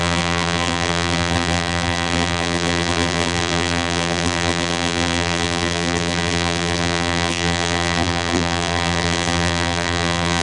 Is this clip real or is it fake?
fake